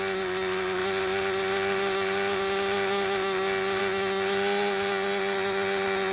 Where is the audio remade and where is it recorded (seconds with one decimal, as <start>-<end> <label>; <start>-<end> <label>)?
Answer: 0.0-6.1 recorded